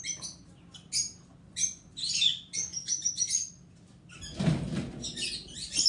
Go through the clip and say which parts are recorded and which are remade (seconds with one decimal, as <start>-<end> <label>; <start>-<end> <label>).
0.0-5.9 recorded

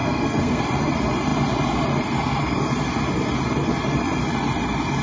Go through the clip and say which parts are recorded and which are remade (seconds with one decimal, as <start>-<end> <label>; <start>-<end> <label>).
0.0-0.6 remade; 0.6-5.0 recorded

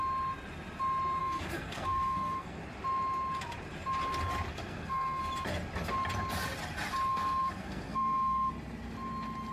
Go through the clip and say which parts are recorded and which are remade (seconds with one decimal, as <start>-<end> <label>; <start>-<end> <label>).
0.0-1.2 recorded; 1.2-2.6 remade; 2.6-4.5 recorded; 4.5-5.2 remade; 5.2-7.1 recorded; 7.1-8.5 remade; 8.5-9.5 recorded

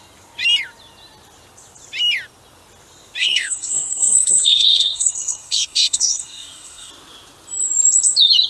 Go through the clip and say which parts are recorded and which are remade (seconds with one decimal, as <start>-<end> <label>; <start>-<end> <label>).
0.0-3.2 recorded; 3.2-6.9 remade; 6.9-8.5 recorded

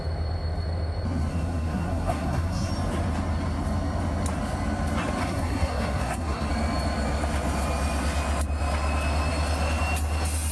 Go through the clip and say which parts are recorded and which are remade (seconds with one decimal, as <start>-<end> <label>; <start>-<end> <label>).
0.0-1.3 recorded; 1.3-2.7 remade; 2.7-5.2 recorded; 5.2-6.5 remade; 6.5-10.5 recorded